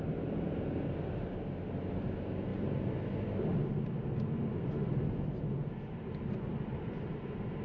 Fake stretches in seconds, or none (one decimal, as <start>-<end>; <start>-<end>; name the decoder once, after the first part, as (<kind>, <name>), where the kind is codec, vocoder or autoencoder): none